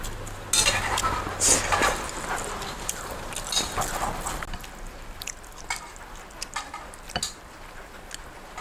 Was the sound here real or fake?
real